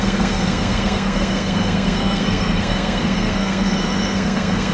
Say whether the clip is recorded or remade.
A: remade